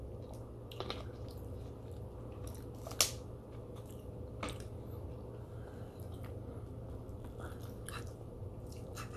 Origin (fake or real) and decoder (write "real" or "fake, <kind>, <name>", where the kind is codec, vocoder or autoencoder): real